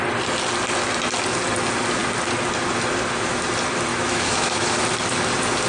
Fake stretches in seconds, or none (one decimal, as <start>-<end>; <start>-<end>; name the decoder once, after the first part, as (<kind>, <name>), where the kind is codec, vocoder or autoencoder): 3.9-4.8 (autoencoder, DAC-VAE)